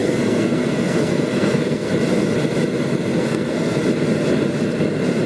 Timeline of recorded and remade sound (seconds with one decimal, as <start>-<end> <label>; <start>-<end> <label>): 0.0-1.9 remade; 1.9-3.1 recorded; 3.1-3.8 remade; 3.8-5.3 recorded